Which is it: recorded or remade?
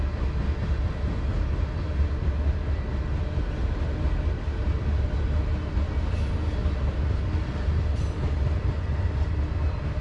recorded